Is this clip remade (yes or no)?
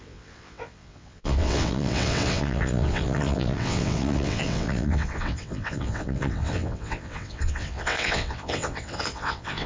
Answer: yes